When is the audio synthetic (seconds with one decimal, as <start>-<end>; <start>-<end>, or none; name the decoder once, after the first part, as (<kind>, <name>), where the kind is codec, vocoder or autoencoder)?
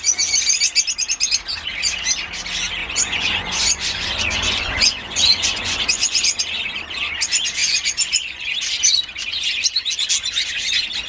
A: 2.8-6.4 (vocoder, Vocos); 7.6-8.5